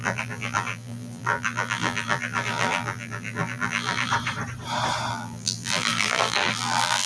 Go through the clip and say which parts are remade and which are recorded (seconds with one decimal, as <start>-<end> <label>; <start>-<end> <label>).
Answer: 0.0-4.1 remade; 4.1-5.1 recorded; 5.1-7.1 remade

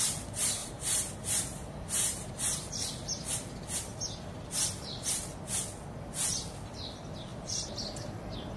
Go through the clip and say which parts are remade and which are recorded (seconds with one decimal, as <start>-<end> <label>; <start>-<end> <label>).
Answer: 0.0-0.6 recorded; 0.6-2.7 remade; 2.7-7.3 recorded; 7.3-8.6 remade

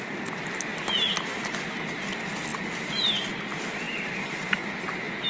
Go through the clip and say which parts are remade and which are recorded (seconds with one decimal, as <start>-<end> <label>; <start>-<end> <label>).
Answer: 0.0-2.5 recorded; 2.5-3.3 remade; 3.3-5.3 recorded

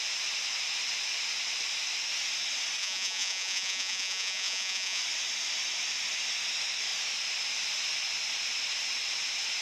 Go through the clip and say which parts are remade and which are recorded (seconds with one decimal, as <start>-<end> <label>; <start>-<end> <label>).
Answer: 0.0-2.8 recorded; 2.8-5.0 remade; 5.0-9.6 recorded

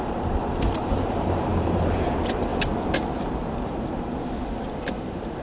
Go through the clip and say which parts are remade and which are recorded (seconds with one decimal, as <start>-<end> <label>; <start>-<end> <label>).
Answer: 0.0-2.5 remade; 2.5-4.9 recorded; 4.9-5.4 remade